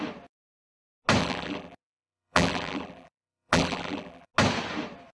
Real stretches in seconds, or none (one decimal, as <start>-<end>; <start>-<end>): 0.0-1.2; 4.3-5.2